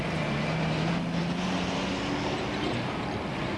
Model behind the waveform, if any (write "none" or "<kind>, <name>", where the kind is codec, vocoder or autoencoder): none